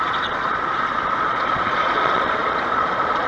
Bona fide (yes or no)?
no